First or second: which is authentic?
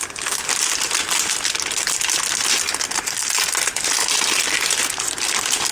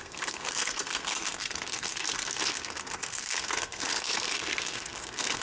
first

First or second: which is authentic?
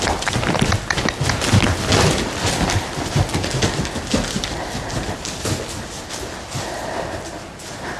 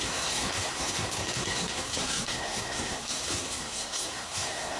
first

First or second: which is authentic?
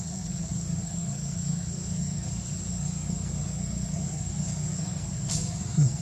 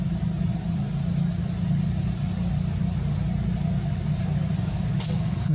second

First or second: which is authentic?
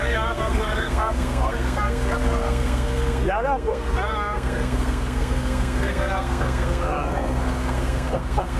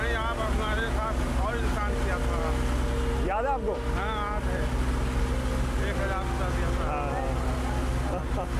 second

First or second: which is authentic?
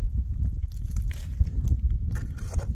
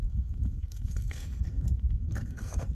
first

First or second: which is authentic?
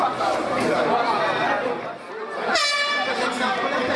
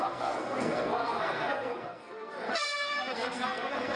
first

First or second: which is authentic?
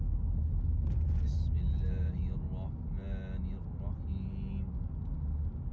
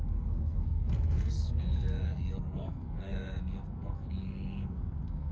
first